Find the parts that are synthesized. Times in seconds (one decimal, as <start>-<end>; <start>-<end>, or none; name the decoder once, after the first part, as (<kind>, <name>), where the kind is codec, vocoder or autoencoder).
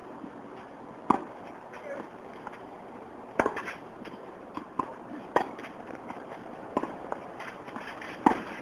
2.3-8.6 (vocoder, BigVGAN v2)